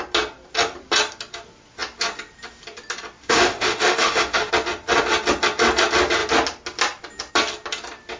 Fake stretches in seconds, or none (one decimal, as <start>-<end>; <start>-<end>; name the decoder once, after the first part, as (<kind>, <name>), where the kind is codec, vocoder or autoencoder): 3.2-4.5 (autoencoder, DAC-VAE)